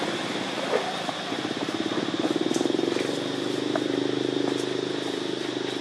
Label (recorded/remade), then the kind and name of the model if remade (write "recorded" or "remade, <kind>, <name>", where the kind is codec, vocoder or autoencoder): recorded